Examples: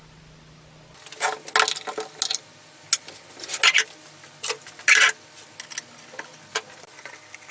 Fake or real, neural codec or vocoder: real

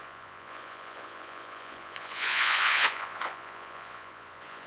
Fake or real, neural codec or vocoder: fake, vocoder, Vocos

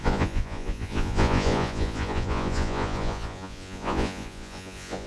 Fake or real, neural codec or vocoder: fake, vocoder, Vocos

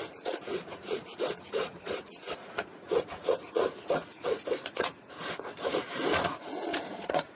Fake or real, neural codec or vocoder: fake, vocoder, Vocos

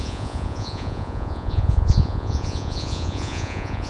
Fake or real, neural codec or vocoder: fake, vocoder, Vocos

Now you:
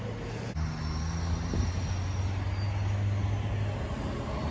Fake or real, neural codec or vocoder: real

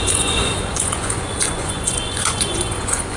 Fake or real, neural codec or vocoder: fake, vocoder, Vocos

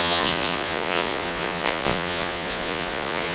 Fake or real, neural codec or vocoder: fake, vocoder, Vocos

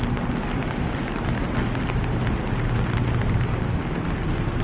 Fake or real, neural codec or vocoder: real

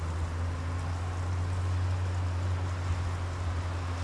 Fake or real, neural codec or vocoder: real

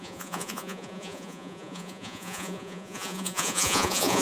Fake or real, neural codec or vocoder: fake, vocoder, Vocos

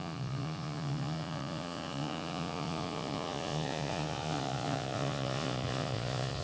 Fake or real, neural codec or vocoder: fake, vocoder, Vocos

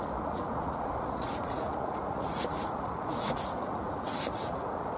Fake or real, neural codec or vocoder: fake, vocoder, Vocos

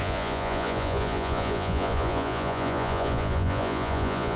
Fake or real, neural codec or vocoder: fake, vocoder, Vocos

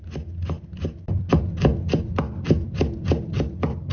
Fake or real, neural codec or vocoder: real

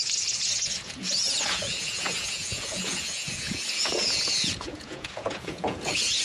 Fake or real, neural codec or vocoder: fake, vocoder, Vocos